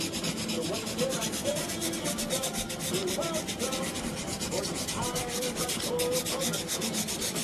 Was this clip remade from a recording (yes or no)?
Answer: no